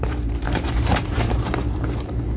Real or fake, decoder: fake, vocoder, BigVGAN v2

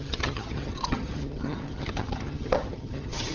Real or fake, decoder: fake, vocoder, HiFi-GAN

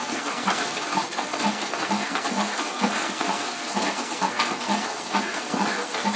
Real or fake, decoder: fake, codec, SNAC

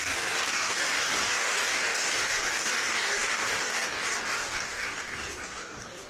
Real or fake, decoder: fake, codec, DAC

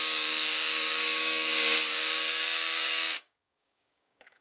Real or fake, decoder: fake, codec, DAC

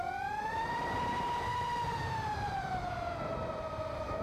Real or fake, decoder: fake, vocoder, BigVGAN v2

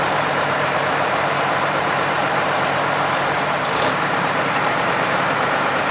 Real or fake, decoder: fake, vocoder, BigVGAN v2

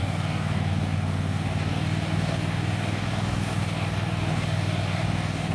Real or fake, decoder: fake, codec, DAC